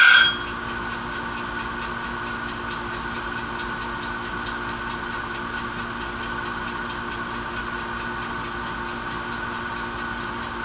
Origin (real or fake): real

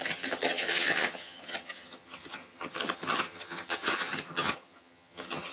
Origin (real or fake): fake